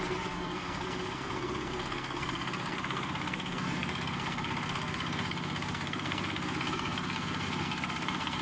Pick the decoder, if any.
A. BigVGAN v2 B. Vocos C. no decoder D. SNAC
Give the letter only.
D